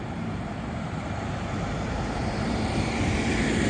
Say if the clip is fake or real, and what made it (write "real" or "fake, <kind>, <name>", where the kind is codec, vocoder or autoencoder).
fake, vocoder, BigVGAN v2